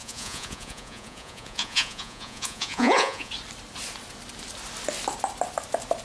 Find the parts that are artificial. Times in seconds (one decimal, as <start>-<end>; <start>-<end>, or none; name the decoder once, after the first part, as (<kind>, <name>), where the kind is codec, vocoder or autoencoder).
0.0-3.3 (vocoder, Vocos)